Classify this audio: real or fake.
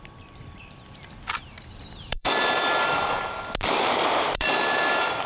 fake